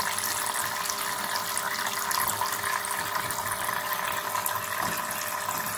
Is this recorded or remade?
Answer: recorded